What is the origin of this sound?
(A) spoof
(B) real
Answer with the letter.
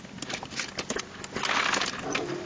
B